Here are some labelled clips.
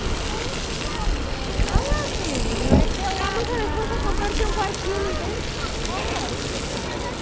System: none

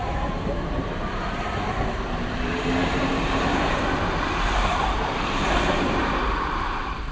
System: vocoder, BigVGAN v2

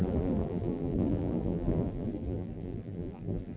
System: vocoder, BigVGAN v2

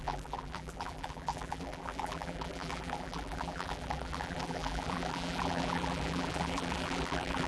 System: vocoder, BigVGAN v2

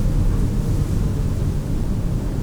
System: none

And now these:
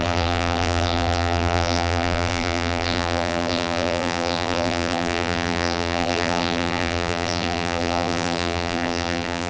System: vocoder, BigVGAN v2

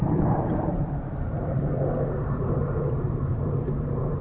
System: vocoder, BigVGAN v2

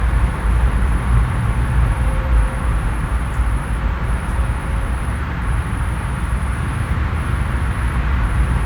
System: vocoder, BigVGAN v2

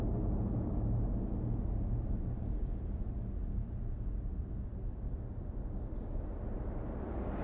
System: none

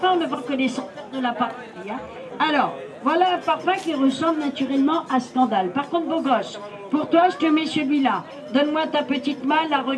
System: none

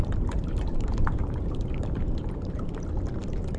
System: vocoder, BigVGAN v2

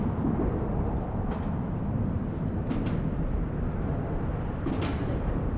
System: vocoder, BigVGAN v2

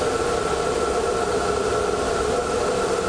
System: none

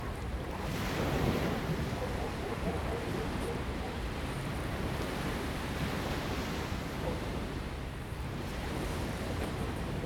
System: vocoder, BigVGAN v2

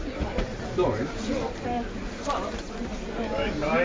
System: vocoder, BigVGAN v2